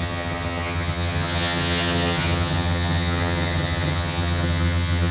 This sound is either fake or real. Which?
fake